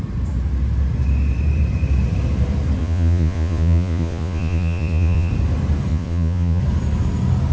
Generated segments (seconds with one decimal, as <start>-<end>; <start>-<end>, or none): 2.8-5.3; 5.9-6.6